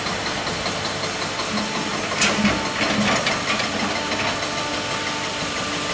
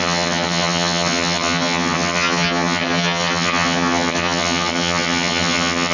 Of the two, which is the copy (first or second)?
second